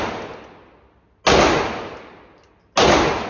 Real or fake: real